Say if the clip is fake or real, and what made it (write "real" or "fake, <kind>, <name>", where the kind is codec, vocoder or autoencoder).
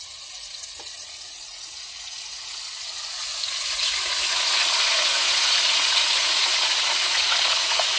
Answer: fake, vocoder, Vocos